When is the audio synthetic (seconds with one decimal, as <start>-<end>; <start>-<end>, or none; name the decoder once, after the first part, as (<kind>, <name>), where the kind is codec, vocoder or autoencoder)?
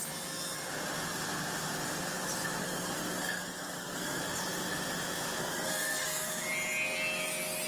2.6-4.2 (codec, SNAC); 5.4-6.4